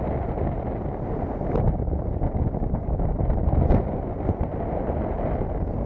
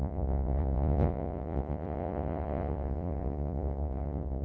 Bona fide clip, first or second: first